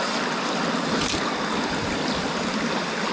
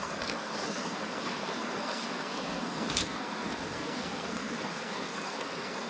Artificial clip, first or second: second